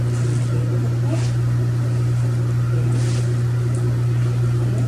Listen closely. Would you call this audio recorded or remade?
recorded